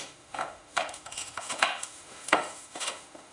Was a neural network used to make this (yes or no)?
yes